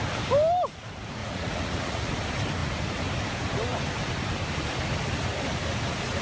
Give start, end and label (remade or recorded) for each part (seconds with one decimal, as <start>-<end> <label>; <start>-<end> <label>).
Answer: 0.0-1.2 recorded; 1.2-2.1 remade; 2.1-6.2 recorded